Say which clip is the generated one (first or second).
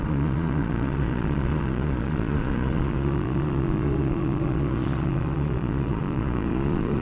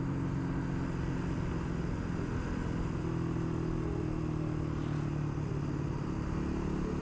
first